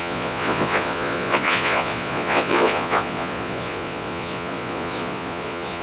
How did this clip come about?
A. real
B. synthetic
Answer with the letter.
B